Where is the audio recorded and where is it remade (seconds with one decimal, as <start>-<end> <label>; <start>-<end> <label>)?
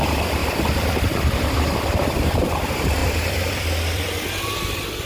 0.0-0.4 remade; 0.4-0.9 recorded; 0.9-5.0 remade